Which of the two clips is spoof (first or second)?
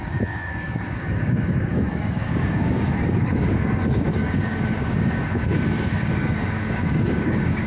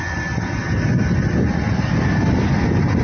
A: first